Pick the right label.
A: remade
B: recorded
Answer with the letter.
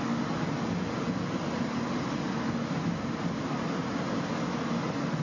B